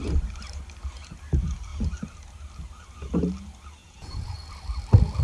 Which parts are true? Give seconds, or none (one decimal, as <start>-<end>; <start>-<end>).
0.0-3.8; 4.5-5.2